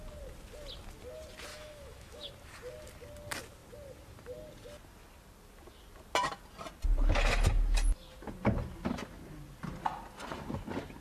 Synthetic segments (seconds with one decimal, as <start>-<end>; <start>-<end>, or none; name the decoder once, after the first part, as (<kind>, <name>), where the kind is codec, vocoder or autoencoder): 1.5-2.3 (autoencoder, DAC-VAE)